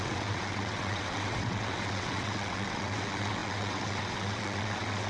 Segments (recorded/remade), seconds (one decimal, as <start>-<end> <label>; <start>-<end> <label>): 0.0-5.1 remade